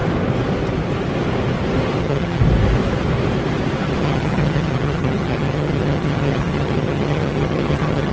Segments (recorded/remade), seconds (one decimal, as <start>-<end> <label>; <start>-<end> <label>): 0.0-2.0 recorded; 2.0-2.4 remade; 2.4-4.0 recorded; 4.0-8.1 remade